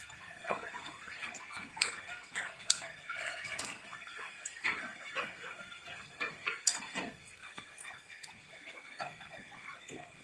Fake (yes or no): yes